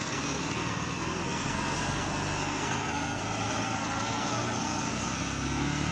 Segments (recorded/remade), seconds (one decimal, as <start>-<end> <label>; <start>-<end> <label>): 0.0-5.9 remade